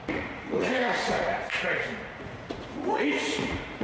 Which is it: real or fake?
fake